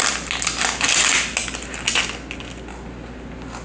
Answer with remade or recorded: recorded